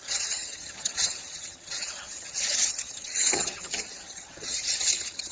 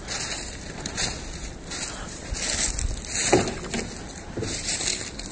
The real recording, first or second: second